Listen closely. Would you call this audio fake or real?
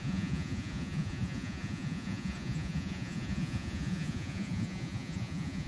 fake